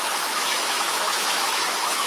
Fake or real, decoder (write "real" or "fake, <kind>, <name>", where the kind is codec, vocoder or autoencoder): fake, autoencoder, DAC-VAE